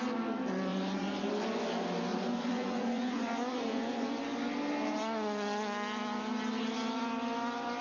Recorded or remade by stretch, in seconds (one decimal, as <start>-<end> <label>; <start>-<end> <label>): 0.0-0.7 recorded; 0.7-1.3 remade; 1.3-2.1 recorded; 2.1-4.2 remade; 4.2-7.8 recorded